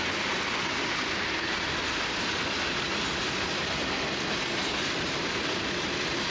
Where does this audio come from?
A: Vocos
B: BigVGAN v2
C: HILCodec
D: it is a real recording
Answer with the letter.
B